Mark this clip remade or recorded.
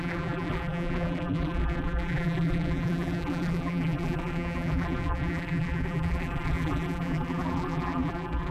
remade